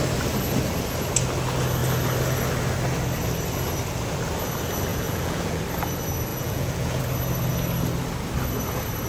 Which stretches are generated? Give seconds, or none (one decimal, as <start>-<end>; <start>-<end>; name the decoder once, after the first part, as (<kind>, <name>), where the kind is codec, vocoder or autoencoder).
4.9-5.6 (vocoder, Vocos); 6.3-7.0